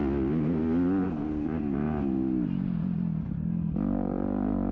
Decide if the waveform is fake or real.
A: real